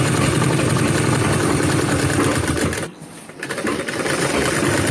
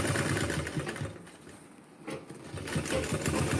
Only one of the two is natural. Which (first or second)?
second